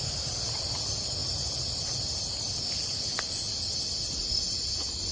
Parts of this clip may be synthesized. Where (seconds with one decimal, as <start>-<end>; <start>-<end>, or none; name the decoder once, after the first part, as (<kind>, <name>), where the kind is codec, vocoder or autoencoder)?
none